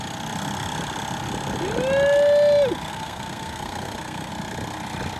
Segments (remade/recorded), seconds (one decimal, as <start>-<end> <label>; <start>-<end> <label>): 0.0-2.9 recorded; 2.9-4.3 remade; 4.3-5.2 recorded

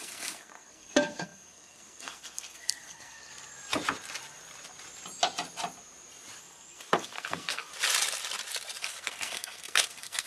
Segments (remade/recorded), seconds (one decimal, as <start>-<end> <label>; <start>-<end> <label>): 0.0-3.3 remade; 3.3-6.4 recorded; 6.4-7.7 remade; 7.7-8.8 recorded; 8.8-10.3 remade

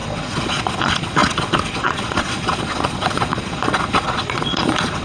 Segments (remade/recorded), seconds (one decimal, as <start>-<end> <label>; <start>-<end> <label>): 0.0-5.0 remade

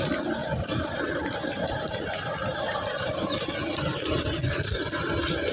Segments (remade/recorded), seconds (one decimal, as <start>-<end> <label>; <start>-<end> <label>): 0.0-0.4 recorded; 0.4-1.9 remade; 1.9-2.5 recorded; 2.5-3.1 remade; 3.1-4.4 recorded; 4.4-5.0 remade; 5.0-5.5 recorded

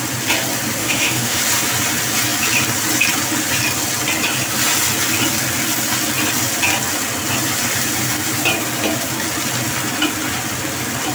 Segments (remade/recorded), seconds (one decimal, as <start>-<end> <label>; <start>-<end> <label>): 0.0-0.8 recorded; 0.8-1.4 remade; 1.4-11.1 recorded